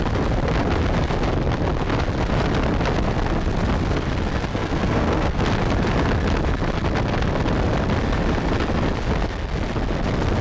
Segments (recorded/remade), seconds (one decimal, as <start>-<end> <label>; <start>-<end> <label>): 0.0-4.5 recorded; 4.5-5.4 remade; 5.4-10.4 recorded